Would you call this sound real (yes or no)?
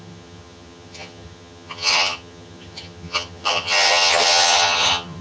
no